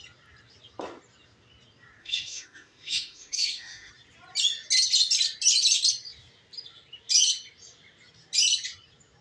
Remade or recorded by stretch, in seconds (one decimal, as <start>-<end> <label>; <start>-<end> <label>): 0.0-2.0 recorded; 2.0-3.9 remade; 3.9-9.2 recorded

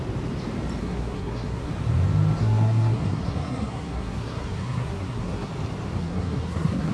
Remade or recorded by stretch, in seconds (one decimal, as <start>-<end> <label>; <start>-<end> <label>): 0.0-0.8 recorded; 0.8-1.7 remade; 1.7-2.4 recorded; 2.4-5.5 remade; 5.5-6.0 recorded; 6.0-6.9 remade

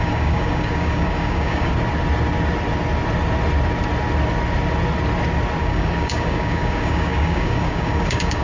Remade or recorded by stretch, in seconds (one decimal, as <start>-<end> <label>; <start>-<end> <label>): 0.0-1.7 remade; 1.7-5.6 recorded; 5.6-8.4 remade